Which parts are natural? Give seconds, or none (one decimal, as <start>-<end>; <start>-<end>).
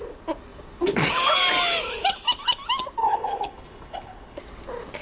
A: 0.0-3.0; 4.4-5.0